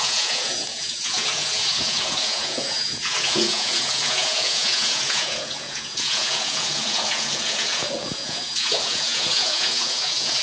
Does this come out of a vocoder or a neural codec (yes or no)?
yes